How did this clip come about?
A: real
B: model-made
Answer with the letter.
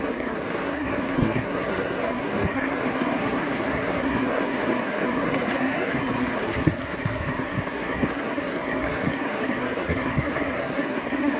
B